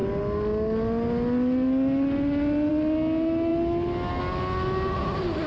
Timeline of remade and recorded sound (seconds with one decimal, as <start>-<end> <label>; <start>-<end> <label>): 0.0-5.5 recorded